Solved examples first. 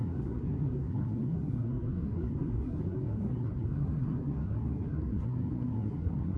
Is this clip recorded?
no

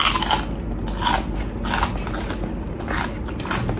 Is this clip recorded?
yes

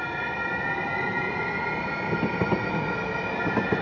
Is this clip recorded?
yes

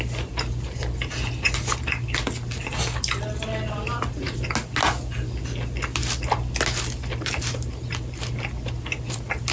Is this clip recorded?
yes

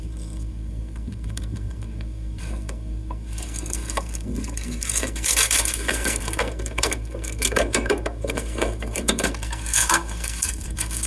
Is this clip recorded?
no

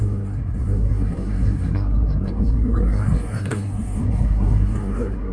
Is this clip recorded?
no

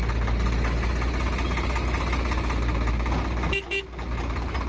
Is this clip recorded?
yes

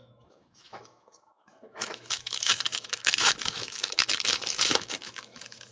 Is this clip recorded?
no